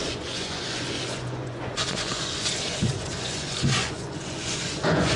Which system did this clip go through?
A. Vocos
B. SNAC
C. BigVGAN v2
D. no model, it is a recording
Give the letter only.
A